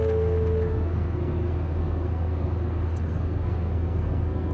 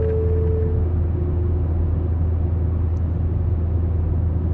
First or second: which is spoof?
first